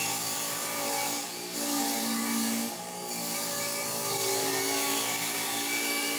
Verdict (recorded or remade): remade